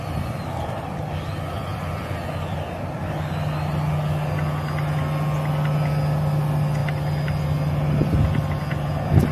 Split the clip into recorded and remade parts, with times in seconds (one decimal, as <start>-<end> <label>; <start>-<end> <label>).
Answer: 0.0-9.3 recorded